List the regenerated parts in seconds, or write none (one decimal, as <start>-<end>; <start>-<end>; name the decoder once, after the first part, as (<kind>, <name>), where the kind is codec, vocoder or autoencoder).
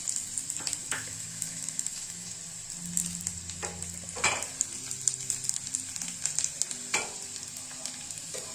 0.8-2.4 (autoencoder, DAC-VAE)